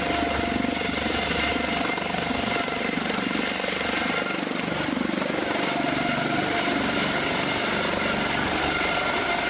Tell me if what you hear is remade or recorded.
recorded